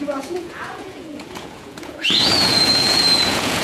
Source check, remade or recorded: remade